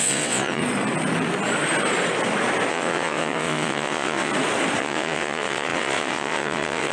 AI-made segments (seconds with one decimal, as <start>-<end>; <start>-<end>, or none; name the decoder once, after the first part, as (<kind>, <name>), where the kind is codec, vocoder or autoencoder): 0.0-0.6 (vocoder, WaveNeXt); 2.7-4.3; 4.8-6.9

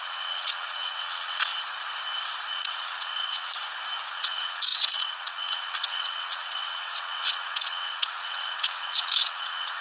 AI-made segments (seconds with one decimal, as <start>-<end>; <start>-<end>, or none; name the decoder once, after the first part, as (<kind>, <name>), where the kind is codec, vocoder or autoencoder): 0.0-1.5 (vocoder, WaveNeXt); 2.5-3.5; 4.1-9.8

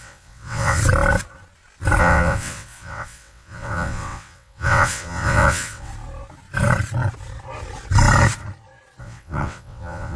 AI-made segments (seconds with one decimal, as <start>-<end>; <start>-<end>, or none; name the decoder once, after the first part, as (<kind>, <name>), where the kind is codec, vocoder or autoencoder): 0.0-0.8 (vocoder, WaveNeXt); 2.0-5.9; 9.0-10.2

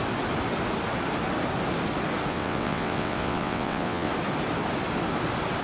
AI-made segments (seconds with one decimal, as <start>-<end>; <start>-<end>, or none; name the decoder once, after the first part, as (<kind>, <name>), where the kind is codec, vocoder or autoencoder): 2.3-4.1 (vocoder, WaveNeXt)